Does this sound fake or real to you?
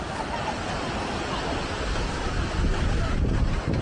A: real